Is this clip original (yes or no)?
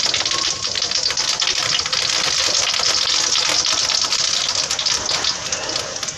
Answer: yes